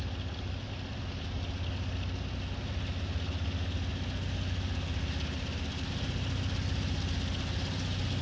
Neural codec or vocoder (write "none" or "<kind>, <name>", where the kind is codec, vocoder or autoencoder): none